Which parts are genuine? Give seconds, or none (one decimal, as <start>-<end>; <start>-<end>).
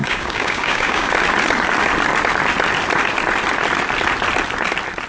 1.1-5.1